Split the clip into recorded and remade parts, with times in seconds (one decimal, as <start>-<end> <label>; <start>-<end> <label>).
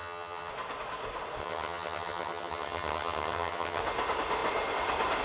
0.0-0.5 remade; 0.5-1.4 recorded; 1.4-3.8 remade; 3.8-5.2 recorded